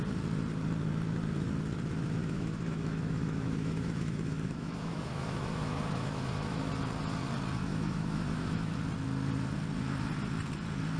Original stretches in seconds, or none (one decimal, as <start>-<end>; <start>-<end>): 0.0-2.2; 6.7-7.7; 8.7-11.0